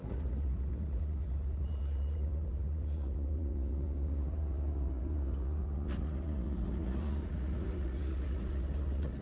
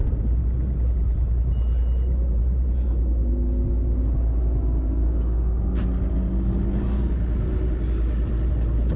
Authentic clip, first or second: second